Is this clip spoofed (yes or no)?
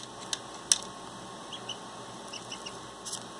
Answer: no